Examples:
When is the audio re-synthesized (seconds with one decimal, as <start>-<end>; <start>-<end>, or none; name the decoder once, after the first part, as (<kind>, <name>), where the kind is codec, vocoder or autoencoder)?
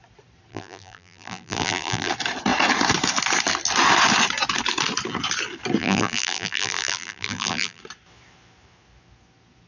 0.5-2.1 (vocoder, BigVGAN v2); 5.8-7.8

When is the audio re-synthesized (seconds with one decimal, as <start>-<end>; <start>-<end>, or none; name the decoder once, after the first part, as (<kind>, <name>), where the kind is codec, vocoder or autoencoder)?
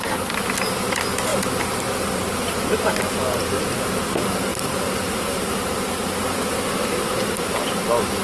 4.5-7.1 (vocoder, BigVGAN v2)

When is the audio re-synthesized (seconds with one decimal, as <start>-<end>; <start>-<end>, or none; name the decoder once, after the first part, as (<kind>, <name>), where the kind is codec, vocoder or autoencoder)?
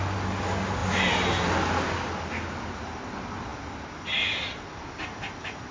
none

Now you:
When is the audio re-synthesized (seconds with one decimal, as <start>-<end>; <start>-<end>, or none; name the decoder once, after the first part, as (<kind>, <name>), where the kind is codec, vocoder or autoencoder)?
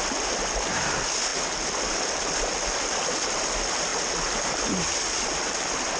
none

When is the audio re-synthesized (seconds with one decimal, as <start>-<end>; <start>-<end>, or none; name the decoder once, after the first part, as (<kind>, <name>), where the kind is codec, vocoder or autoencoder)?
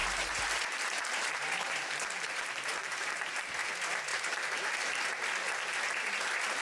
0.0-3.6 (vocoder, BigVGAN v2); 4.1-5.1